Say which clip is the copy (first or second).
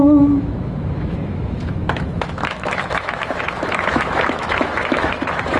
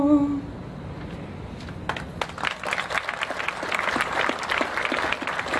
first